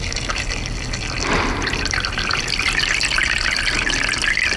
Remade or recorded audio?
recorded